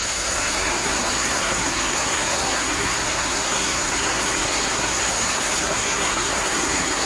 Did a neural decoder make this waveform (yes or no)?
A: yes